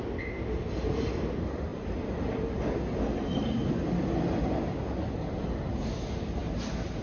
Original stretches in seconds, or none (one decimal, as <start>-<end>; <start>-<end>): 0.0-7.0